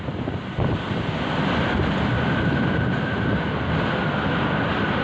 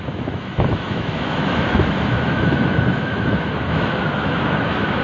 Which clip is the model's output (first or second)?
second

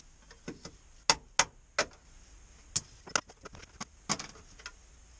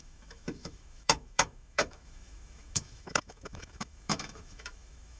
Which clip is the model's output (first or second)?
second